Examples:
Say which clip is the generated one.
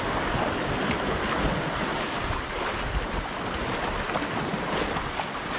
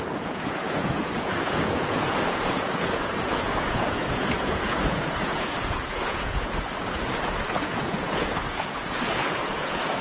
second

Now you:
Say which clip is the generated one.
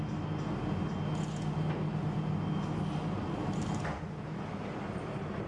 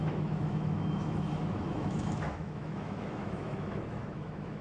second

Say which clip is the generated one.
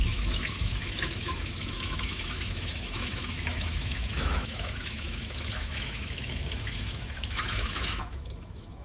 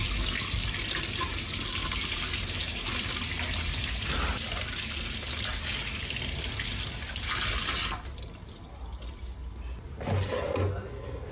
first